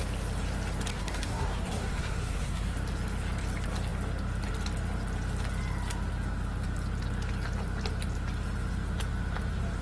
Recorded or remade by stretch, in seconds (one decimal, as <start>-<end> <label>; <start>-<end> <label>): 0.0-0.9 recorded; 0.9-2.7 remade; 2.7-9.8 recorded